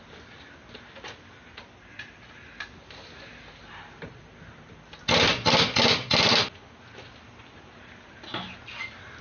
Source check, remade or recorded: recorded